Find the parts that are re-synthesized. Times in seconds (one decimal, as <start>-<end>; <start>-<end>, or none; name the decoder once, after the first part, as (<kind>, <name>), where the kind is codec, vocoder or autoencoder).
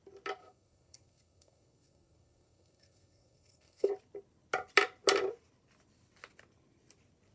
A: 0.4-3.9 (codec, SNAC)